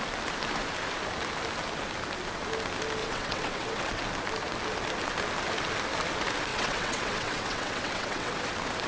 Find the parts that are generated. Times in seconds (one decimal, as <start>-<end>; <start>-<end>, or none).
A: 3.0-4.0; 6.5-8.4